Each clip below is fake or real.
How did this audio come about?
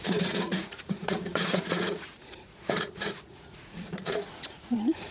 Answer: fake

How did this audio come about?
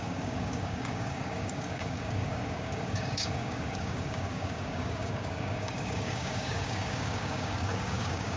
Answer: fake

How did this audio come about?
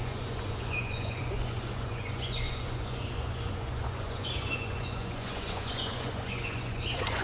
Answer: fake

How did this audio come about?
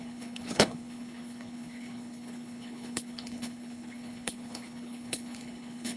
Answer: fake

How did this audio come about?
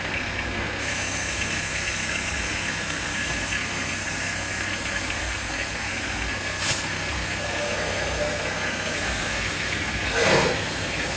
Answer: fake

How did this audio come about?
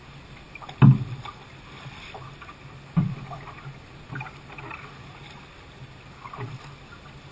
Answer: real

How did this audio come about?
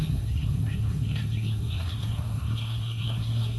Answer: fake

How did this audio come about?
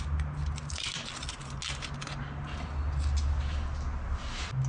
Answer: real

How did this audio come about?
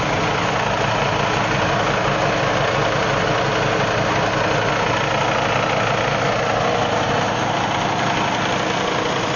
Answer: real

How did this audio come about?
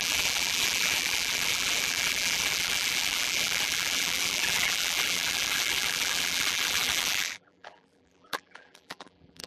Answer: fake